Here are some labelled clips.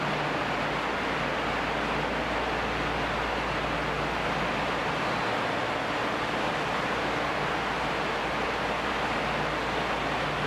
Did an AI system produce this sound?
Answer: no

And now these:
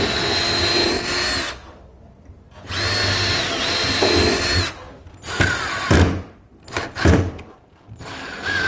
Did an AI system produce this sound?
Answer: no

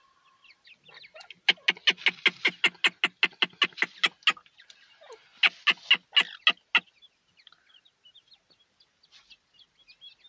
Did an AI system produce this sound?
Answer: no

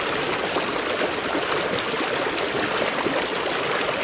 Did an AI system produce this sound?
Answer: no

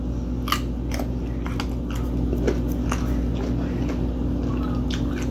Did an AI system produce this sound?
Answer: no